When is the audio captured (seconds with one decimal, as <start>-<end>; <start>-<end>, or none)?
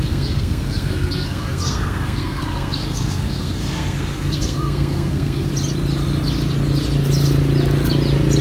5.5-8.4